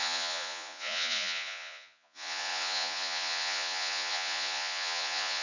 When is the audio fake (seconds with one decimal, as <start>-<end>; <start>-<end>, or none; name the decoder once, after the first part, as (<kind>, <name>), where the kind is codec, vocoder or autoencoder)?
0.0-5.4 (vocoder, Vocos)